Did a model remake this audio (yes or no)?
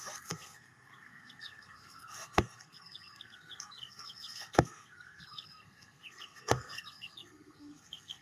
yes